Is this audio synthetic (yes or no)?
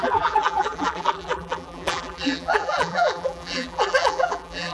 yes